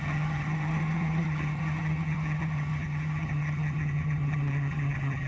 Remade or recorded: remade